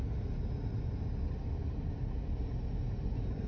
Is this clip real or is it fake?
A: real